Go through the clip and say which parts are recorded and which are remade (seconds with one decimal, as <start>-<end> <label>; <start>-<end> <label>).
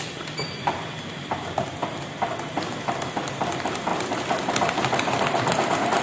0.0-1.8 remade; 1.8-3.2 recorded; 3.2-3.9 remade; 3.9-4.6 recorded; 4.6-6.0 remade